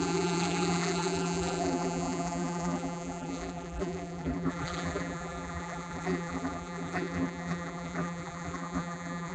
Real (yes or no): no